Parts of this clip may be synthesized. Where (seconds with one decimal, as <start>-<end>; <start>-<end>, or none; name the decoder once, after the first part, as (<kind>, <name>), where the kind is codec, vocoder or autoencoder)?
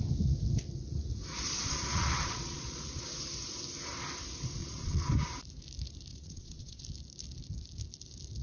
1.3-3.0 (vocoder, Vocos); 4.6-5.1; 6.1-6.8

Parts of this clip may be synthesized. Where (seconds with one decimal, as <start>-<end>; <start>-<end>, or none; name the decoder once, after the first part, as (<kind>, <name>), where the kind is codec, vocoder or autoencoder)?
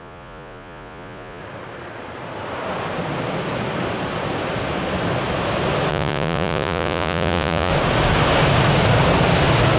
0.0-1.4 (vocoder, Vocos); 5.9-7.7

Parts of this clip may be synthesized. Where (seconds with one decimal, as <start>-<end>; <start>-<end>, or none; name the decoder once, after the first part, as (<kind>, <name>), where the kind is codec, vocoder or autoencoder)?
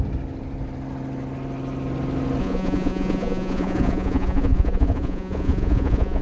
2.4-6.2 (vocoder, Vocos)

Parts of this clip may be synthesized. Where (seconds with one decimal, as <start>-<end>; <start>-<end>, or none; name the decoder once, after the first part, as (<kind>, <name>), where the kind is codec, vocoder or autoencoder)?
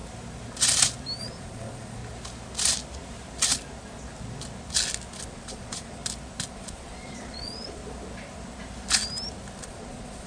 1.2-2.0 (vocoder, Vocos); 5.3-6.0; 6.5-7.8; 9.6-10.3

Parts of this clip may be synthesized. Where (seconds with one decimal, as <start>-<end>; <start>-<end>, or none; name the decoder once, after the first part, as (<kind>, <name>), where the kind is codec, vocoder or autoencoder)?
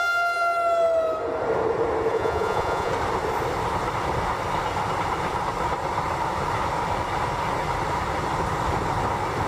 2.1-2.9 (vocoder, Vocos)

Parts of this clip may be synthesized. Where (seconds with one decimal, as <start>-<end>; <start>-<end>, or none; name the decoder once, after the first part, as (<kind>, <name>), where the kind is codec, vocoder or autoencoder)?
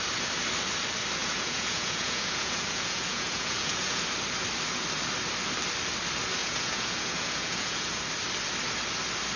1.2-4.0 (vocoder, Vocos); 6.4-8.0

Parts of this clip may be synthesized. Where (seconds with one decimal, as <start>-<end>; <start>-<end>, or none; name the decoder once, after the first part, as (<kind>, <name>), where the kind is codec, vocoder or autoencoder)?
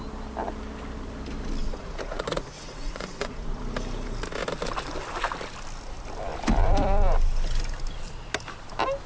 1.6-3.6 (vocoder, Vocos)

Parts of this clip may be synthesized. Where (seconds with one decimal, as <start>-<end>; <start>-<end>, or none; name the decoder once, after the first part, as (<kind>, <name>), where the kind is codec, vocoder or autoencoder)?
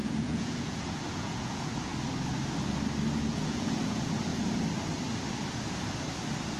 0.0-1.9 (vocoder, Vocos); 3.3-4.3